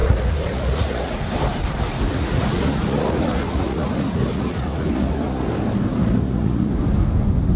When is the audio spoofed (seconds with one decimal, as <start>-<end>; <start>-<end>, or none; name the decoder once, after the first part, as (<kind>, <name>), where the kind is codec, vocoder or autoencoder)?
0.0-1.2 (vocoder, Vocos); 2.1-5.5; 6.0-6.7